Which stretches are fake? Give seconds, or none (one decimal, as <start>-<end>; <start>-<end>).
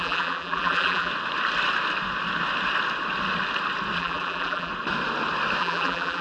0.0-1.1; 4.0-4.7; 5.6-6.2